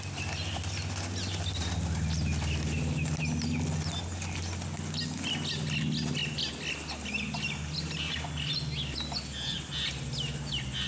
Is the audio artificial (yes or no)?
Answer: no